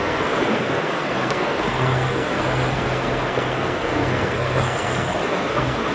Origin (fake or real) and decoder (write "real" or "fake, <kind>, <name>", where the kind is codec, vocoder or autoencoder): fake, codec, SNAC